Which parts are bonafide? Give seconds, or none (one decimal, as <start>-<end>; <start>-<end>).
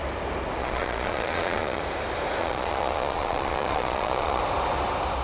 0.0-0.6; 1.8-2.4; 4.4-5.2